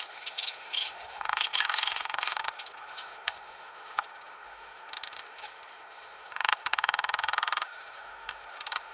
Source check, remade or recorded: remade